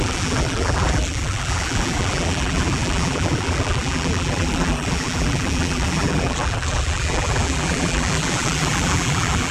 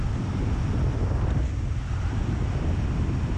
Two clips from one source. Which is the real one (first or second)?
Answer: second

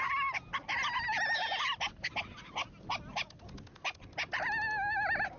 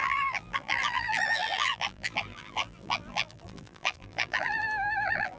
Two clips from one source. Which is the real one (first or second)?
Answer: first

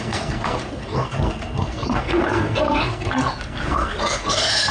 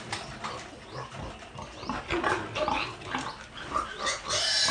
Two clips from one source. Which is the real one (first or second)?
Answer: second